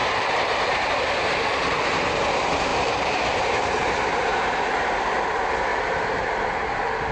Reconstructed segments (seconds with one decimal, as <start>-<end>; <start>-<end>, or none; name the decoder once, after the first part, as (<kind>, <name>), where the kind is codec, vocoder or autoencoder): 0.0-2.0 (vocoder, BigVGAN v2); 2.7-3.2; 4.3-5.2; 5.7-6.5